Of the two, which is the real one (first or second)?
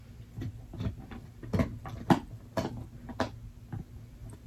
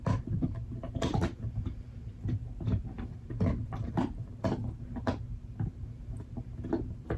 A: first